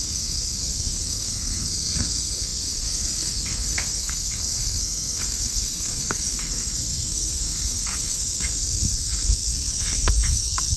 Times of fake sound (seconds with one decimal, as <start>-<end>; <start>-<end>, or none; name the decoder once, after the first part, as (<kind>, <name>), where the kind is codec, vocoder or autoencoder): 0.0-10.8 (codec, SNAC)